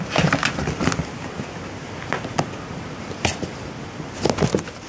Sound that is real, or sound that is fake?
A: real